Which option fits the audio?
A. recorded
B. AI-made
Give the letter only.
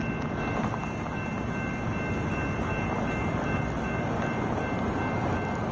A